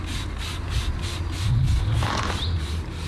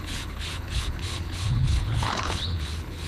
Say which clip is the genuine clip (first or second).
first